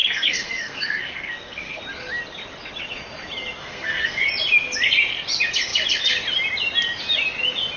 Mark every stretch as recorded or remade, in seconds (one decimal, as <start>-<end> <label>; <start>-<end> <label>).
0.0-1.8 remade; 1.8-3.6 recorded; 3.6-4.2 remade; 4.2-7.8 recorded